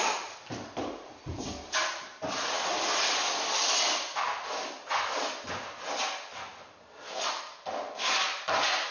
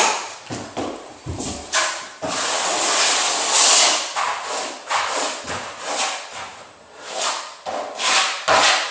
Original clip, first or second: first